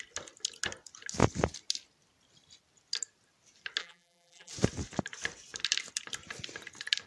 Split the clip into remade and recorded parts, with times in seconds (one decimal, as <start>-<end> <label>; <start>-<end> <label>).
0.0-3.8 recorded; 3.8-4.5 remade; 4.5-7.1 recorded